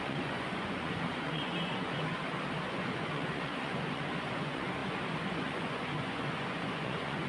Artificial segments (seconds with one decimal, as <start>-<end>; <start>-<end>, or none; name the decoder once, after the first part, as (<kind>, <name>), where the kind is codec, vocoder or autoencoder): 0.0-2.1 (vocoder, Vocos); 2.7-7.3

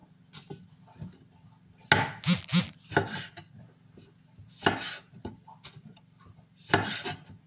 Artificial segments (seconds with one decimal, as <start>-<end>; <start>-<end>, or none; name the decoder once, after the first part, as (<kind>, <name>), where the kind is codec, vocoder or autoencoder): none

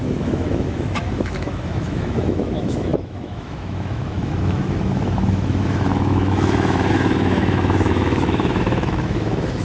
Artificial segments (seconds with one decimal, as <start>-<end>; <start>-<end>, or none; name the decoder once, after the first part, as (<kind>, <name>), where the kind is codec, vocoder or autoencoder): 0.0-9.6 (autoencoder, DAC-VAE)

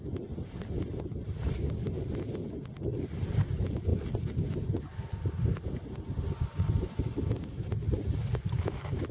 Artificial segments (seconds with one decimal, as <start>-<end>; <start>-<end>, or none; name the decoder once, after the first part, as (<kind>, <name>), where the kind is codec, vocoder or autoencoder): none